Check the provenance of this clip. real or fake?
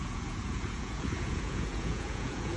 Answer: fake